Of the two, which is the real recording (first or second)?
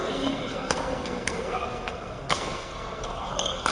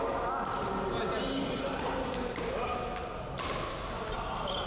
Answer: second